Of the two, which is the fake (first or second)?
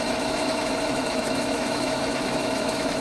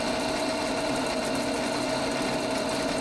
first